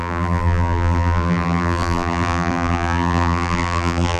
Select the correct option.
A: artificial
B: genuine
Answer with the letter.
A